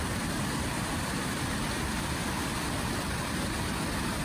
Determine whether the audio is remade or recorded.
recorded